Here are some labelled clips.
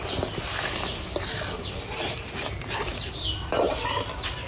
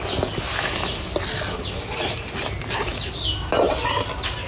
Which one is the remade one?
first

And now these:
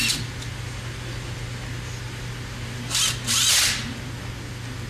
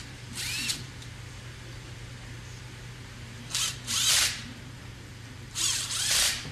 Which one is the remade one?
second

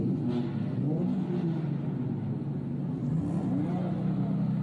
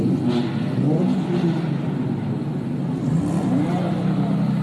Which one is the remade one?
second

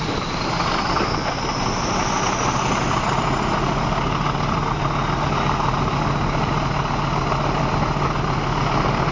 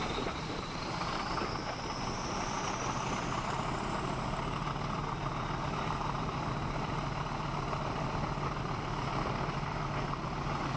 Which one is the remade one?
second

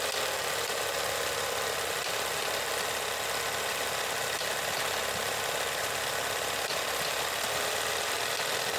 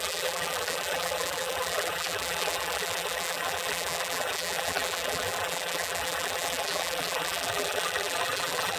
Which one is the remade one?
second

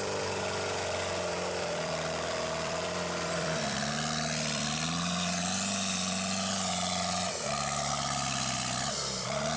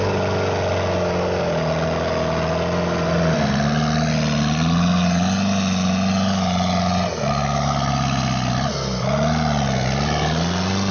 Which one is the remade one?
first